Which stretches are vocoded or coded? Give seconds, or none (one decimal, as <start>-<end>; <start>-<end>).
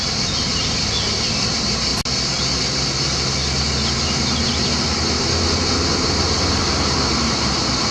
none